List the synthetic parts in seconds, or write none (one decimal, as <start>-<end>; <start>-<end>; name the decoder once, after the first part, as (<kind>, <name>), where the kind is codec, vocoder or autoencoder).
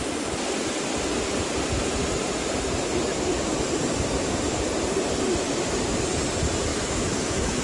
6.7-7.6 (autoencoder, DAC-VAE)